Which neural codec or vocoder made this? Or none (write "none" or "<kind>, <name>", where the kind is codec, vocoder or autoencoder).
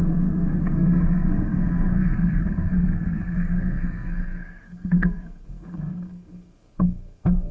codec, SNAC